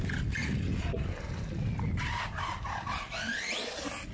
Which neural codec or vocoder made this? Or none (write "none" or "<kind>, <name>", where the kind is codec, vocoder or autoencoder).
none